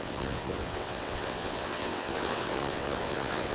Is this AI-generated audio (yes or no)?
yes